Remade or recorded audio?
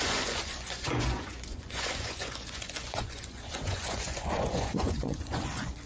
remade